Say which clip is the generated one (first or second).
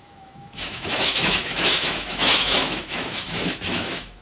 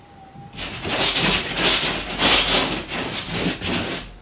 first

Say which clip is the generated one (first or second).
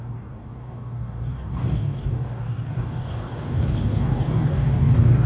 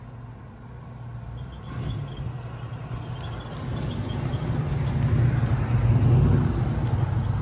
first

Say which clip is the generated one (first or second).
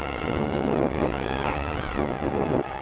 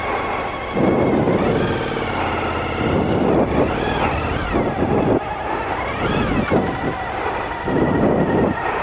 first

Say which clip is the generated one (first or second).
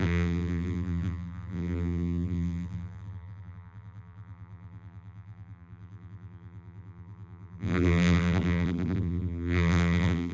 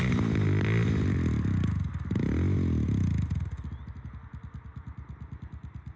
first